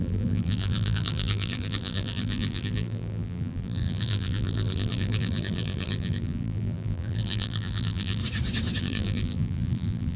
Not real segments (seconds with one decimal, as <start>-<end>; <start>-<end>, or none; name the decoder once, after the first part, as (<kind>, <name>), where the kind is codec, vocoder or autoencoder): 0.0-8.2 (vocoder, BigVGAN v2); 8.8-10.2